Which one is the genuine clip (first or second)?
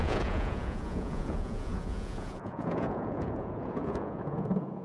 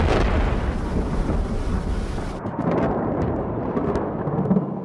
second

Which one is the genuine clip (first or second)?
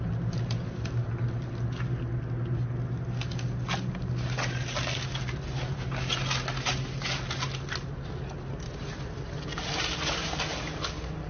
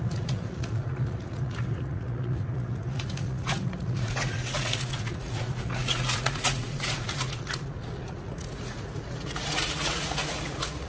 first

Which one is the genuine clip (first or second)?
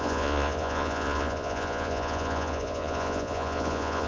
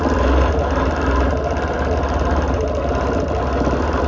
second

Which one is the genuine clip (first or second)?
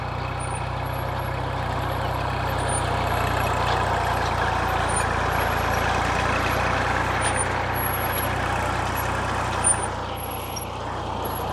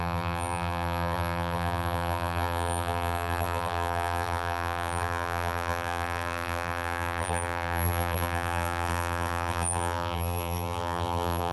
first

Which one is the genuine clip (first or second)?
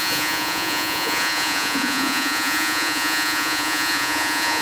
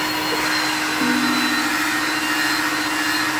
second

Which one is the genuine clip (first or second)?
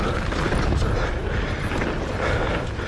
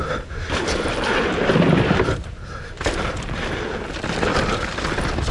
first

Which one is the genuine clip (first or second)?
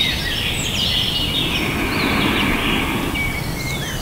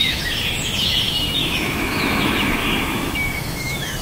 first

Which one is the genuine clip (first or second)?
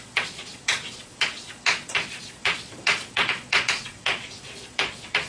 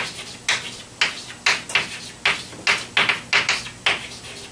second